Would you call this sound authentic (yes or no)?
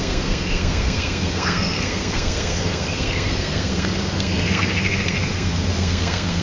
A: no